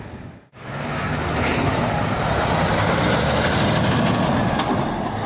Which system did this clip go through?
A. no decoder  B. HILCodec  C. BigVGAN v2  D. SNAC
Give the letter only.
A